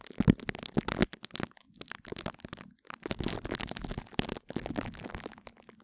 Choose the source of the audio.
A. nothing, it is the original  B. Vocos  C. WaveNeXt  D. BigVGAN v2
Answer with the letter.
A